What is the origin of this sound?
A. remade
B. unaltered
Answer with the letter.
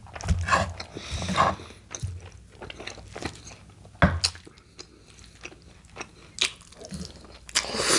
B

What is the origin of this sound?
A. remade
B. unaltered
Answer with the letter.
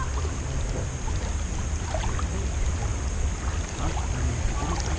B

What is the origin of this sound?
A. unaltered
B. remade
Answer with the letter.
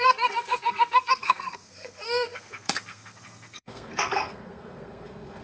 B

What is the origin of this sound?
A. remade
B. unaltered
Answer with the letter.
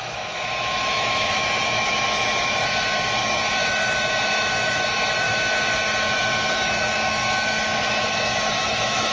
A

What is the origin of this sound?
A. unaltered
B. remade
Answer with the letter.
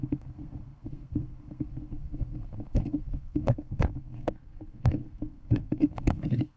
B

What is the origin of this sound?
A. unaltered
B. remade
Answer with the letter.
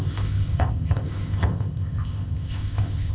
B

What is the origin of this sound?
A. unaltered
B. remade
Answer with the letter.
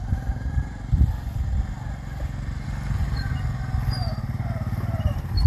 A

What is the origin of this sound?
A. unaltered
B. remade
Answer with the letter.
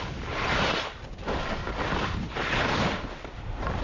A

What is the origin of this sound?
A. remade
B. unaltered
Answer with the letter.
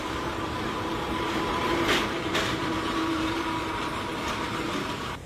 A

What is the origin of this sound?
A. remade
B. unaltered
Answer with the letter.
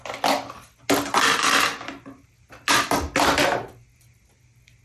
B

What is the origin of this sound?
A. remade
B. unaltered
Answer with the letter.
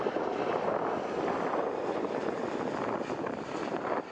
A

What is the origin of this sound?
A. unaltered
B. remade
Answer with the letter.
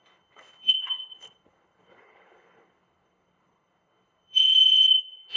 B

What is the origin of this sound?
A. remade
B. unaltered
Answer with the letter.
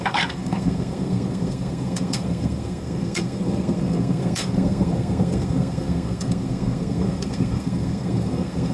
A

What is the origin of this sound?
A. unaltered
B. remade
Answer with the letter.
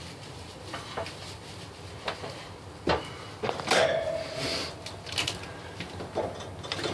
A